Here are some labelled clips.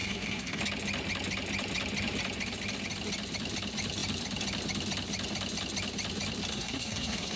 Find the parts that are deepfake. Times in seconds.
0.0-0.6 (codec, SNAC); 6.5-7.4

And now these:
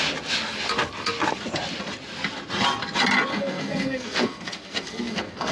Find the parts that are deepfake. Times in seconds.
3.3-5.5 (codec, SNAC)

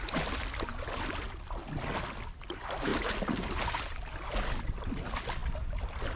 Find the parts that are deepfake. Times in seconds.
none

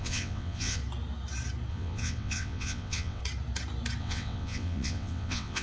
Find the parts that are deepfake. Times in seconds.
0.0-0.8 (vocoder, WaveNeXt); 1.7-3.2; 4.0-5.6

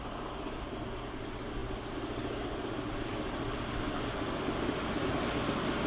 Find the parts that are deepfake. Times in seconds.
none

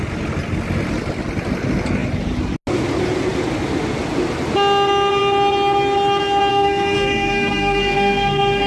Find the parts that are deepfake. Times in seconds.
6.5-8.7 (codec, SNAC)